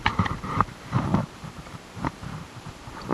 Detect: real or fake fake